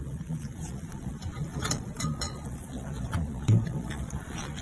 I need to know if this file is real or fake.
fake